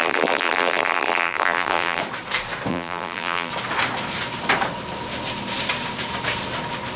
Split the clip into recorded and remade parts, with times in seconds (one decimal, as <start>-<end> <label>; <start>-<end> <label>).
0.0-2.0 remade; 2.0-2.7 recorded; 2.7-3.5 remade; 3.5-7.0 recorded